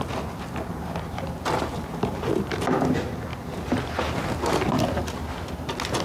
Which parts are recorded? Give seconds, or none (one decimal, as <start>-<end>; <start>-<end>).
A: 0.0-6.0